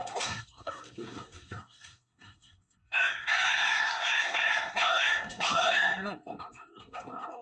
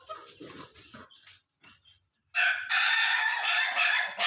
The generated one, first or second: first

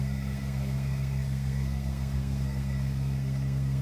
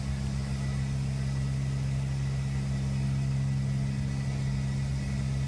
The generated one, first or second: first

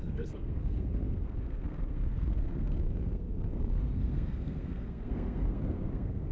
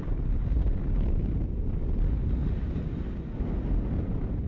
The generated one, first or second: first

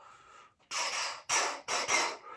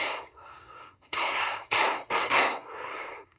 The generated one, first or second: second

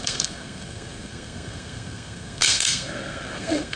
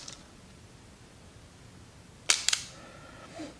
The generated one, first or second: first